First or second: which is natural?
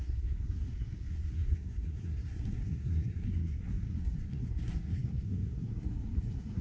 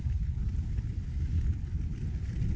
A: second